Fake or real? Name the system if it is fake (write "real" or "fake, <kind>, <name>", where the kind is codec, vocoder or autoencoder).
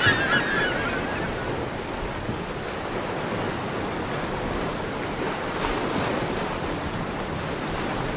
real